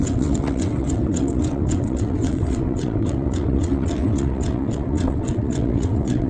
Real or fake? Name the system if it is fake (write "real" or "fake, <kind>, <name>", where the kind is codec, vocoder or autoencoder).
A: fake, vocoder, WaveNeXt